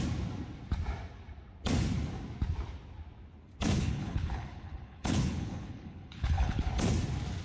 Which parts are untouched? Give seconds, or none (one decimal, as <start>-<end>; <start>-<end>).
0.0-3.8; 6.7-7.4